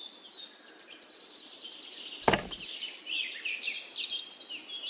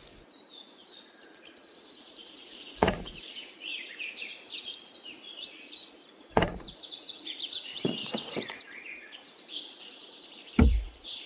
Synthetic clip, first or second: second